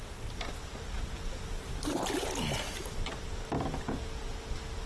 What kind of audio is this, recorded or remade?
recorded